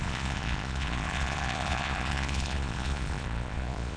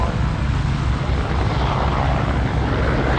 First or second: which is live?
second